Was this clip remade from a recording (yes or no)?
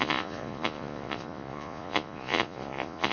yes